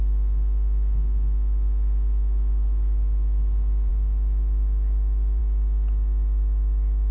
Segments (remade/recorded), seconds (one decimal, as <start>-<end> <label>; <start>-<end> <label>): 0.0-7.1 recorded